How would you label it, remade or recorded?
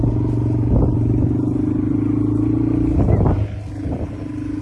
recorded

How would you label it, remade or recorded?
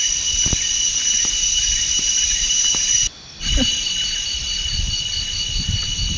recorded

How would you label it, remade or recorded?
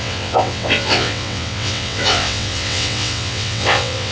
remade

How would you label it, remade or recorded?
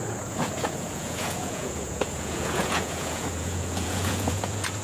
remade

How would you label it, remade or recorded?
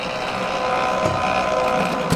recorded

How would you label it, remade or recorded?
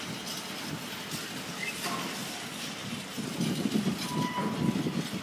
recorded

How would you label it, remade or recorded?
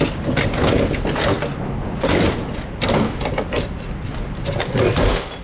recorded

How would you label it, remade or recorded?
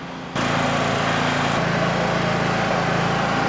recorded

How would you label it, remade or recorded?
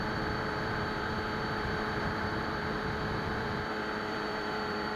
remade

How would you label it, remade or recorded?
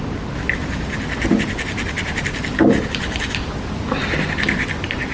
recorded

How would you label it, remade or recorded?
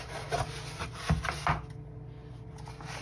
recorded